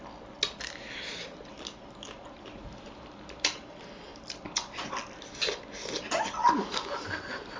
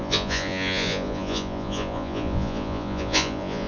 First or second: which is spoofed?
second